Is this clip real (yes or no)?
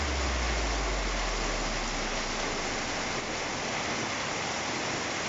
yes